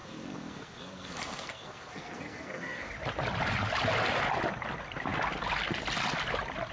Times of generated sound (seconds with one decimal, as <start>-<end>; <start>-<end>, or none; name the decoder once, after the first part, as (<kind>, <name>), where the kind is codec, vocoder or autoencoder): 0.0-2.9 (codec, SNAC)